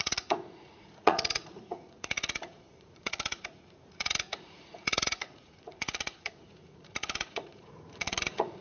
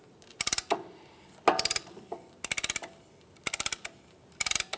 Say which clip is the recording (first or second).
second